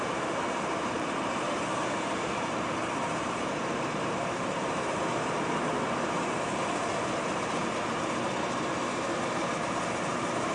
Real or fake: fake